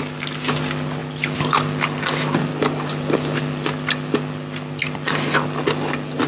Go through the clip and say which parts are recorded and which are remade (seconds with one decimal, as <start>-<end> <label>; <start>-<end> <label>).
0.0-6.3 recorded